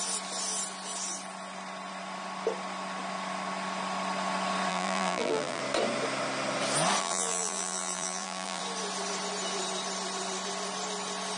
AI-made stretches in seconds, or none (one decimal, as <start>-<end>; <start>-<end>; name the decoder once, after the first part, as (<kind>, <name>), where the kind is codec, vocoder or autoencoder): 4.7-5.6 (vocoder, BigVGAN v2); 7.0-8.6